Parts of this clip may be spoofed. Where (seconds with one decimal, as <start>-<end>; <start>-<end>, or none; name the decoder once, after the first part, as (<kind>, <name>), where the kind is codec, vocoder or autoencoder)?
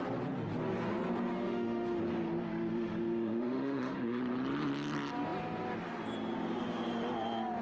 1.3-2.0 (autoencoder, DAC-VAE); 2.4-4.2